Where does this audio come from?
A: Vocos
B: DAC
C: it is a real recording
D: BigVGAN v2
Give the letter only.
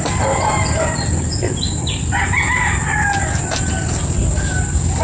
C